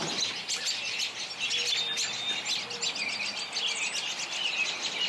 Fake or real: real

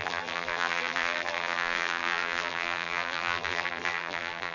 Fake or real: fake